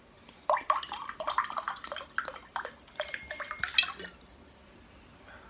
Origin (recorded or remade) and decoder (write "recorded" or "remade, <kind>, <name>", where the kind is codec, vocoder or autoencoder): recorded